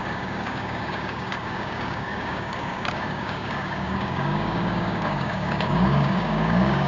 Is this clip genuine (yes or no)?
no